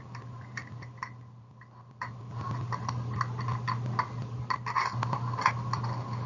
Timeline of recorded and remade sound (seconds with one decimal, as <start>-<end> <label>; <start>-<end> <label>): 0.0-6.3 recorded